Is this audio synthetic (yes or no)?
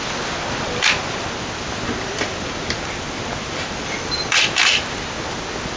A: no